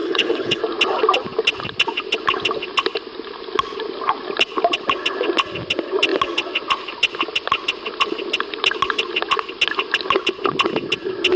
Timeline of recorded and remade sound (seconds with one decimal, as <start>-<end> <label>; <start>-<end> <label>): 0.0-0.6 remade; 0.6-11.4 recorded